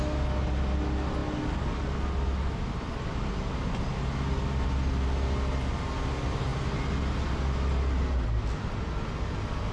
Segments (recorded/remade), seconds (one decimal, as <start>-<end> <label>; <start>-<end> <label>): 0.0-9.7 recorded